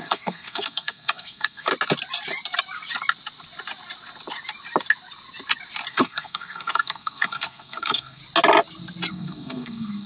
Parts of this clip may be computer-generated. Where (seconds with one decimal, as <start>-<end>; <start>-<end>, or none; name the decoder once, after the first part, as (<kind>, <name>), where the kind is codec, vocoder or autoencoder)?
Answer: 0.0-1.7 (codec, SNAC); 5.9-8.2; 9.1-10.1